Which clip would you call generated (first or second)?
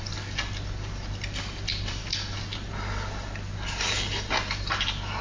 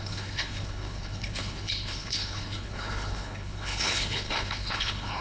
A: second